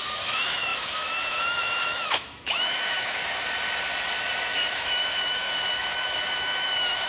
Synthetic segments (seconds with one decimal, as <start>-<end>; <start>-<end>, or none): 0.0-3.2; 4.7-7.1